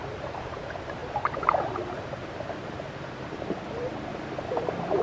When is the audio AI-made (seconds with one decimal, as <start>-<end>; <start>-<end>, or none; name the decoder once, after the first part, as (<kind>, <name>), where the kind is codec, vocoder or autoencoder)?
0.0-5.0 (vocoder, BigVGAN v2)